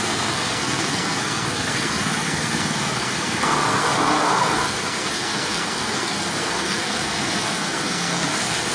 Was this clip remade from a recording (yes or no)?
yes